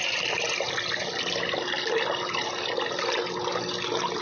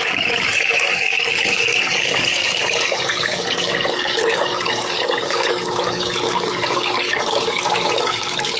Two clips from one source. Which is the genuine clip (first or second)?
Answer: first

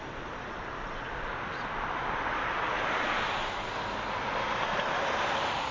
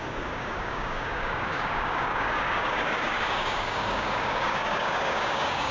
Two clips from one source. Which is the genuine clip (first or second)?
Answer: first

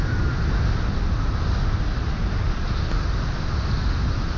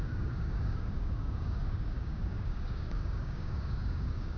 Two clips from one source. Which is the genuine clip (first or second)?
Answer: first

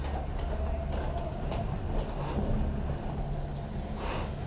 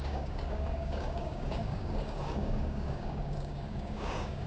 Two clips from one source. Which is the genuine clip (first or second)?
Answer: first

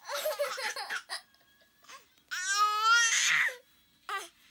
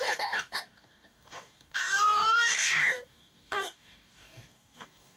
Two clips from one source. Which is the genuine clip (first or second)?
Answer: first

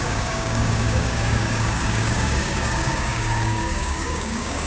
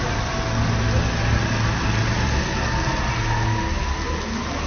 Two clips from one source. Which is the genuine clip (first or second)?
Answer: second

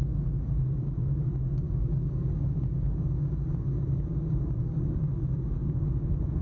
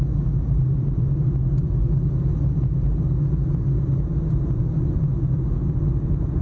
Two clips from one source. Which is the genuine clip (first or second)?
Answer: second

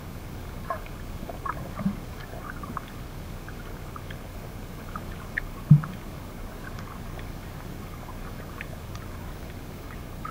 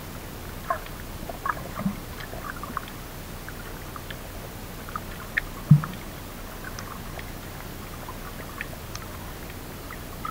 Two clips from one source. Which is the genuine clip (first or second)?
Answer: second